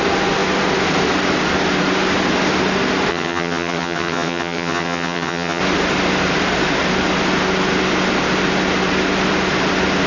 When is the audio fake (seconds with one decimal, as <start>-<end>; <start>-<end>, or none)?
3.1-5.6